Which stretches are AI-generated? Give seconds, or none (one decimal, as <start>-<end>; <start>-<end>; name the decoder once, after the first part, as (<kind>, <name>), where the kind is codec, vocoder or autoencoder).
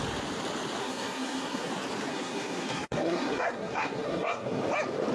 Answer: 0.8-1.7 (codec, SNAC); 2.1-4.6